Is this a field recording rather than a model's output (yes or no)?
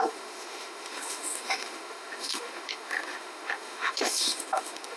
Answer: no